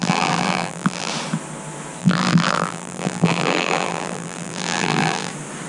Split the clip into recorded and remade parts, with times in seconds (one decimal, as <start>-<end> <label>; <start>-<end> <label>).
0.0-1.1 remade; 1.1-2.0 recorded; 2.0-5.3 remade; 5.3-5.7 recorded